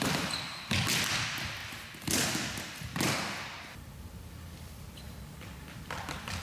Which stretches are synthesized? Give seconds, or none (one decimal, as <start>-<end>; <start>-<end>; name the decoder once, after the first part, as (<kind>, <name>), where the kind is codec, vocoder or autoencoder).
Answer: none

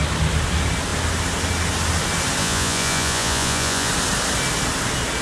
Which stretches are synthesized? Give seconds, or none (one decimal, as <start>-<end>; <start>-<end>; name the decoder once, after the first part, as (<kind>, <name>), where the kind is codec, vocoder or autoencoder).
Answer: 2.4-3.9 (vocoder, Vocos)

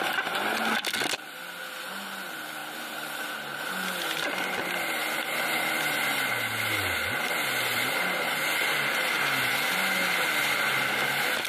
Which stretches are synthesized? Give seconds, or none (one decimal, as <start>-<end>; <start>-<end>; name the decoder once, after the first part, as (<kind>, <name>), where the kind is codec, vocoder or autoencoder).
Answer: none

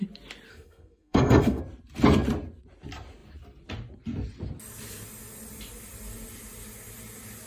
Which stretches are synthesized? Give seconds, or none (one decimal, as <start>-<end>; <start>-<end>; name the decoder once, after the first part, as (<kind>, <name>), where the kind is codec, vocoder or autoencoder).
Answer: 0.5-1.6 (codec, SNAC)

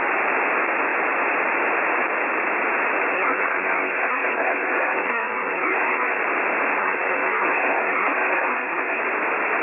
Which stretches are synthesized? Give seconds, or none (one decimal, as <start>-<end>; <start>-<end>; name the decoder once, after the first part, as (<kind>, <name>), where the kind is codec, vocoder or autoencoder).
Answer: 3.1-6.2 (codec, SNAC); 6.8-9.0